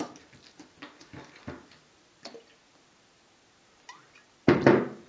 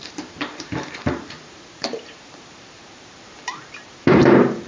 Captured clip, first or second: first